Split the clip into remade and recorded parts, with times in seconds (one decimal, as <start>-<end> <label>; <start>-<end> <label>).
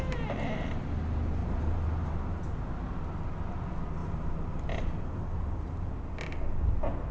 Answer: 0.0-1.4 recorded; 1.4-2.4 remade; 2.4-4.0 recorded; 4.0-5.9 remade; 5.9-7.1 recorded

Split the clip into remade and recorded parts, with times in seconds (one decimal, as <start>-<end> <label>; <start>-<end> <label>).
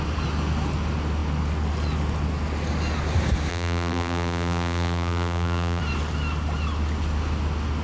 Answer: 0.0-3.5 recorded; 3.5-5.8 remade; 5.8-7.8 recorded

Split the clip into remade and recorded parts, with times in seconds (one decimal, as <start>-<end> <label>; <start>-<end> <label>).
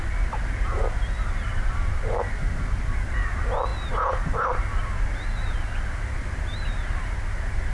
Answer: 0.0-7.7 recorded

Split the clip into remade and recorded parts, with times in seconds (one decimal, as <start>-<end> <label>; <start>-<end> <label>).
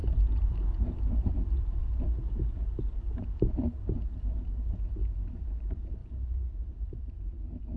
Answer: 0.0-1.3 remade; 1.3-6.0 recorded; 6.0-7.1 remade; 7.1-7.8 recorded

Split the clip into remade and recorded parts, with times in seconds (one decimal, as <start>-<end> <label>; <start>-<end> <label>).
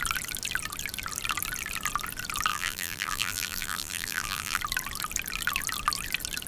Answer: 0.0-2.5 recorded; 2.5-4.6 remade; 4.6-6.5 recorded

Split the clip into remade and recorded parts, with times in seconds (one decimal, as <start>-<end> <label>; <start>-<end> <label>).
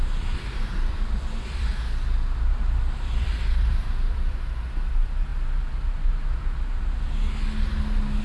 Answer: 0.0-1.7 remade; 1.7-2.5 recorded; 2.5-5.3 remade; 5.3-8.2 recorded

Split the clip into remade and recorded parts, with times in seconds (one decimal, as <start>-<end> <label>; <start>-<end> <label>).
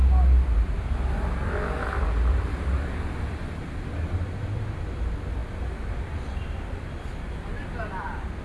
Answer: 0.0-5.4 remade; 5.4-7.9 recorded; 7.9-8.4 remade